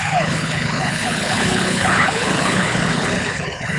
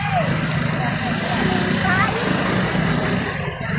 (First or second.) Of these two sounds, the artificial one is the first